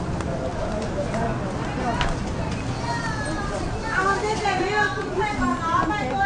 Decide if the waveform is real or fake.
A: real